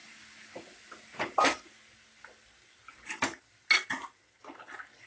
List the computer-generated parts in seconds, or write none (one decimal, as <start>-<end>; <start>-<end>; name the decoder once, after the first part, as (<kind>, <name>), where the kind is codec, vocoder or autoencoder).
none